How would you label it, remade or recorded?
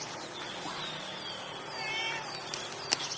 recorded